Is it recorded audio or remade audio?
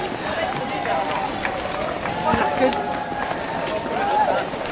recorded